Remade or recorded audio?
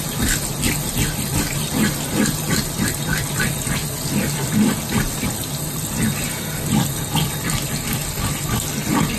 recorded